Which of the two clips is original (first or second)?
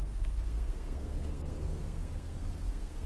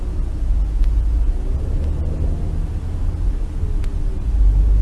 second